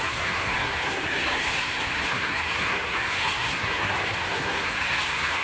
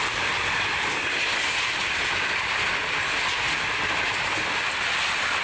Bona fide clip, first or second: second